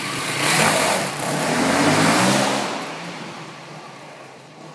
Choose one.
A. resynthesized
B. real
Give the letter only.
A